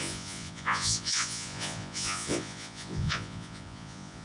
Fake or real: fake